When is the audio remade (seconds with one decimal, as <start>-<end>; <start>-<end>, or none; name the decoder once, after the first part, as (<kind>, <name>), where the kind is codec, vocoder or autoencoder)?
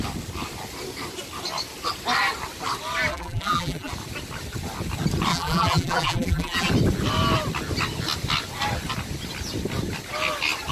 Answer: 3.1-3.9 (vocoder, BigVGAN v2); 5.3-6.7